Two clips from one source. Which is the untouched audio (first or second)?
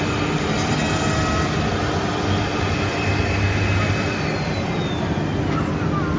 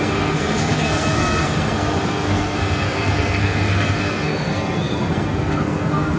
first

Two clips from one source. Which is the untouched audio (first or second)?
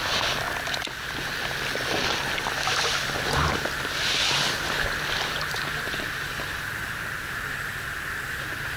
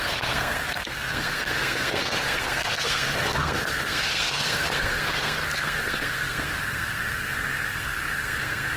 first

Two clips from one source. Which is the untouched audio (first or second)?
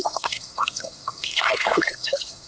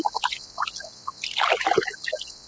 second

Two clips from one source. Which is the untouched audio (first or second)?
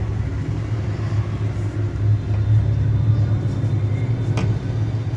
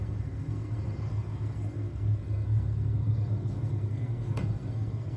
first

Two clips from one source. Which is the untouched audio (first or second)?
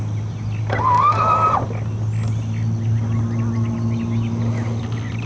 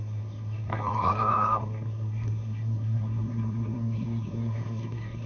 first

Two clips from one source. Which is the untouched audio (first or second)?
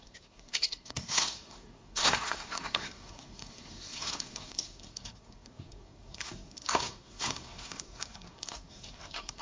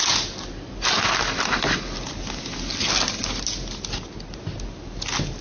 second